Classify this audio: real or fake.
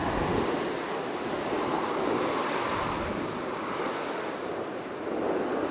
real